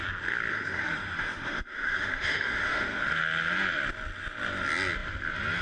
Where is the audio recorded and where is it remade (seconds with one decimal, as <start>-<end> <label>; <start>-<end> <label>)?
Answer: 0.0-0.5 recorded; 0.5-3.1 remade; 3.1-5.6 recorded